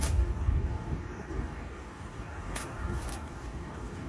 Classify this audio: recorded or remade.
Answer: remade